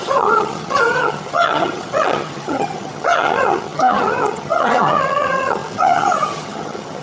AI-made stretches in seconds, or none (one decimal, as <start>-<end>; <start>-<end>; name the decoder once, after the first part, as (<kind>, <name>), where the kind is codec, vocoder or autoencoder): 0.0-7.0 (vocoder, HiFi-GAN)